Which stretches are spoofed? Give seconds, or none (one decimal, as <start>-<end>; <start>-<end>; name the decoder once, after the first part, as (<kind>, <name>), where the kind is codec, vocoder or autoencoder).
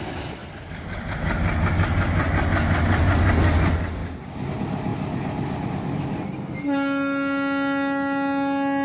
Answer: 4.0-4.5 (codec, DAC)